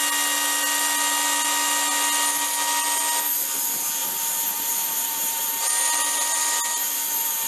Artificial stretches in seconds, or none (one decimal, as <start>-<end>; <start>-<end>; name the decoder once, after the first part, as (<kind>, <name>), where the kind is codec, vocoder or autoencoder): 4.0-5.4 (vocoder, BigVGAN v2)